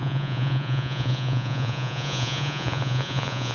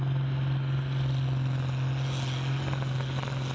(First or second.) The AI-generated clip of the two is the first